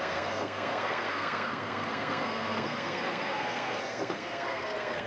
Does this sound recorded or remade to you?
remade